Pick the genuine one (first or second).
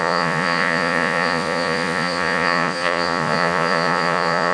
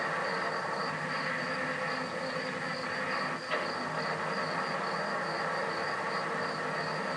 second